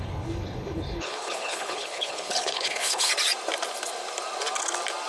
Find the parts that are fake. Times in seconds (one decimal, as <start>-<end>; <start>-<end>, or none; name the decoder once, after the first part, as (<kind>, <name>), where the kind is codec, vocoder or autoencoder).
0.0-3.1 (codec, HILCodec)